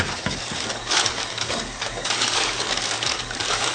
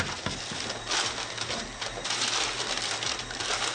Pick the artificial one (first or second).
first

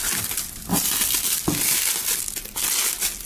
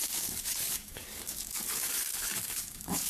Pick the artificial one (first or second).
second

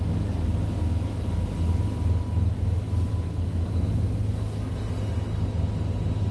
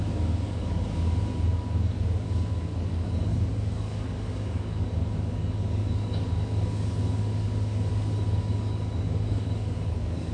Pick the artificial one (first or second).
second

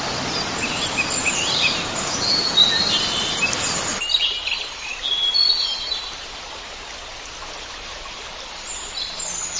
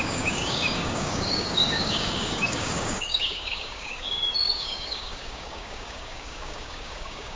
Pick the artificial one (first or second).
second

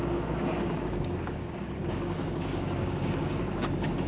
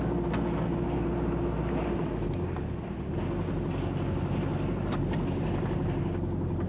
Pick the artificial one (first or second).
first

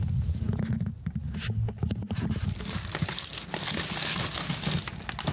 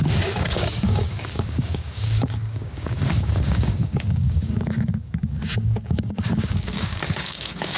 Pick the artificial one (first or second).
second